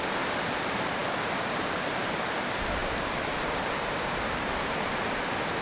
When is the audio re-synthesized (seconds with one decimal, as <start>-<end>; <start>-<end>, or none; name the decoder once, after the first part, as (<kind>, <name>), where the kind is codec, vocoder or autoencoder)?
0.0-5.6 (vocoder, BigVGAN v2)